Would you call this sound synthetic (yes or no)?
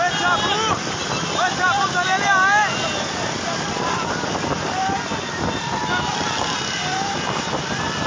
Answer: yes